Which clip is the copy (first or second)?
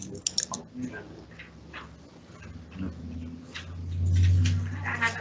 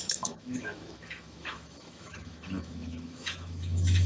second